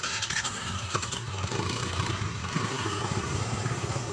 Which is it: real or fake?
fake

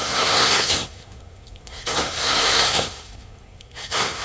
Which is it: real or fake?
fake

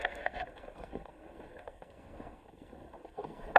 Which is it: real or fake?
fake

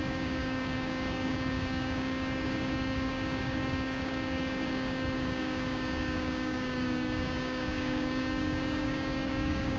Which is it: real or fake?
fake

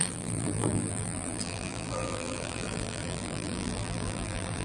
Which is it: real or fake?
fake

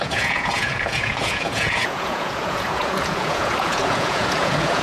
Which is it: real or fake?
fake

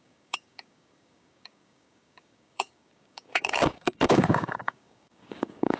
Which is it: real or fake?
fake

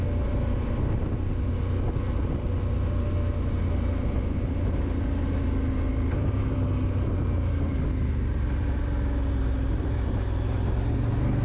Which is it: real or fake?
real